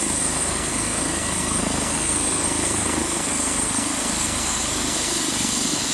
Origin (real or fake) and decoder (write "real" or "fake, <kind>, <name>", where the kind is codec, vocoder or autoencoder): fake, codec, SNAC